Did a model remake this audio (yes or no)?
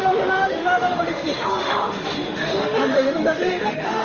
yes